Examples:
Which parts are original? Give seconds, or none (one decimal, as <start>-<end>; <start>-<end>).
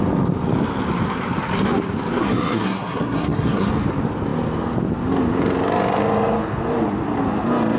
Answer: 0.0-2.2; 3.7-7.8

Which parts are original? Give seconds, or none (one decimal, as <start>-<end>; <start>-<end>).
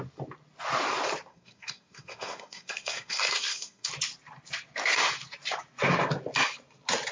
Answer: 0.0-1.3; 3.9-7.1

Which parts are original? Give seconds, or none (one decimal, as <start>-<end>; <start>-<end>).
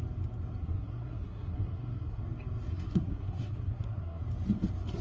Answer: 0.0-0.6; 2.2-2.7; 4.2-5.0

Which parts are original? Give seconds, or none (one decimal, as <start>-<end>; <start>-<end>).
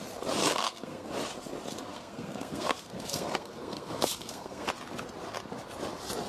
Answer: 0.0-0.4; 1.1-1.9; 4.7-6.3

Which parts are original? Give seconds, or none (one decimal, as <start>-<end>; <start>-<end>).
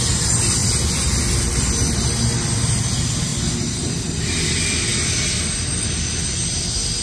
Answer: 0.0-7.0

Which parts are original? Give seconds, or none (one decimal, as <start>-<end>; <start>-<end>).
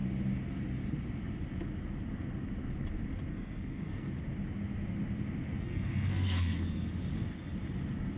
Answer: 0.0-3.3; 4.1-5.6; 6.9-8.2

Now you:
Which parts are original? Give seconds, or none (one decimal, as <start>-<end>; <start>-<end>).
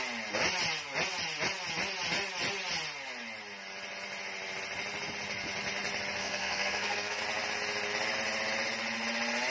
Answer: 0.0-6.2; 7.2-9.5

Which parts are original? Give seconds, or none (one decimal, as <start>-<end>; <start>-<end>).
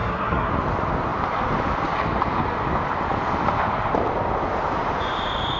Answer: 0.5-5.6